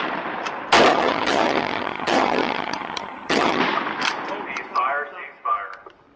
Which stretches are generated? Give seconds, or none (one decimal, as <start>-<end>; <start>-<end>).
0.9-3.6